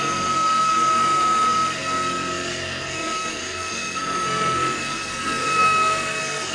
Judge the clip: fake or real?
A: fake